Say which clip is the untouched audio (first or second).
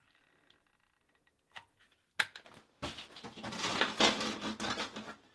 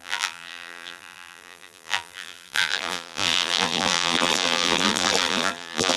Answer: first